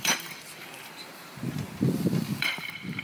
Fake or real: fake